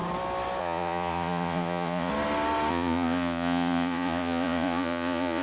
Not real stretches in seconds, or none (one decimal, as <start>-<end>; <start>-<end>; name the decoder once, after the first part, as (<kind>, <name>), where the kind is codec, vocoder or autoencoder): 0.6-2.1 (vocoder, Vocos); 2.7-5.4